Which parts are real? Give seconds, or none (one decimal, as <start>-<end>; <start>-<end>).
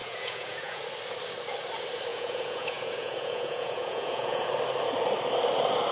0.8-2.1; 4.5-5.9